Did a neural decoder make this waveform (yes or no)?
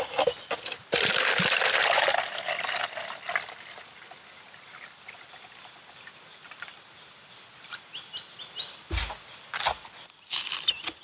no